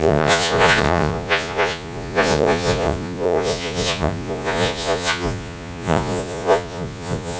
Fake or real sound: fake